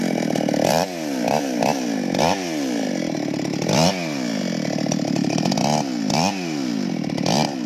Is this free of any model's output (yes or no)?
yes